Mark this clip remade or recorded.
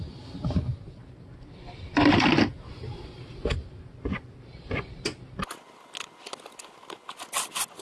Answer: recorded